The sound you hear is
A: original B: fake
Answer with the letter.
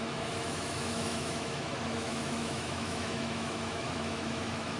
B